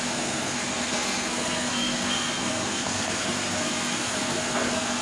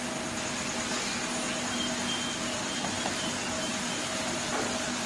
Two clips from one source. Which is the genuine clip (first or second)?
second